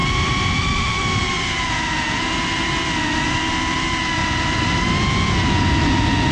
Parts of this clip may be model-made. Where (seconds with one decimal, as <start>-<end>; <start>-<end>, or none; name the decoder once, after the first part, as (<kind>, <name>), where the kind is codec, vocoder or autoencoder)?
0.0-2.3 (vocoder, BigVGAN v2); 4.2-4.8